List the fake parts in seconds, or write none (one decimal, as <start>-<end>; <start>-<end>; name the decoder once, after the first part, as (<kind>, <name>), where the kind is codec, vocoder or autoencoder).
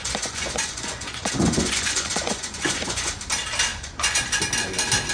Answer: 0.0-3.1 (vocoder, Vocos); 3.7-4.4